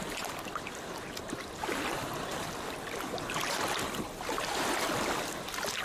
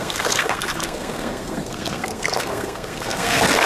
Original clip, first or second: first